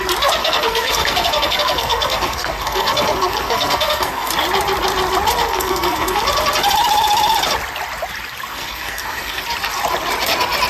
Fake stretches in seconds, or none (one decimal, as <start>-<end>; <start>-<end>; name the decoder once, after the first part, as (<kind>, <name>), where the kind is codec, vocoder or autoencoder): 0.4-4.3 (codec, SNAC); 5.4-6.2; 8.5-9.4